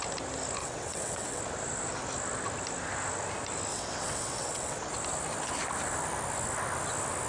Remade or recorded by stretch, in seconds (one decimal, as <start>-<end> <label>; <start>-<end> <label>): 0.0-0.6 recorded; 0.6-1.4 remade; 1.4-3.7 recorded; 3.7-4.9 remade; 4.9-7.3 recorded